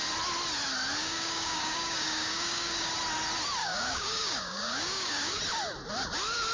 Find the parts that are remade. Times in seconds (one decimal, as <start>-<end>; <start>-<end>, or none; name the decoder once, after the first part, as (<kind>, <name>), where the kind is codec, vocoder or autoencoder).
1.0-2.9 (codec, DAC); 3.6-5.4